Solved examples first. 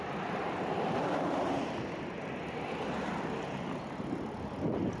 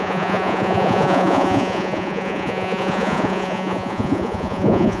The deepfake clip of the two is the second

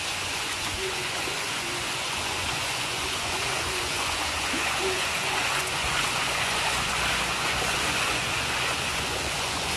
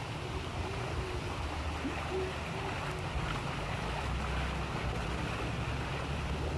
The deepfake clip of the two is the first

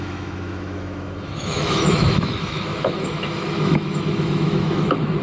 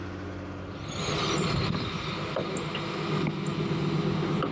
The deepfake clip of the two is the first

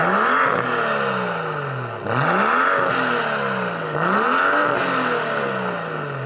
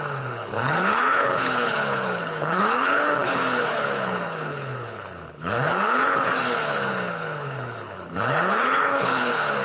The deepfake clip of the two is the second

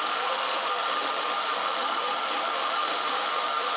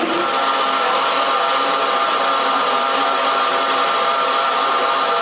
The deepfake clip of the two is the first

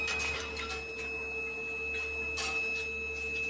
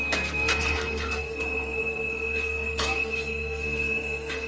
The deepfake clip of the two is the second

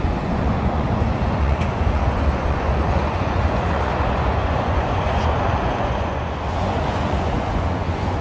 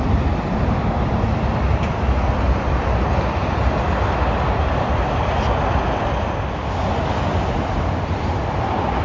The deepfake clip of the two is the first